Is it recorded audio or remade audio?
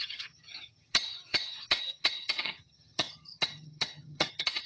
remade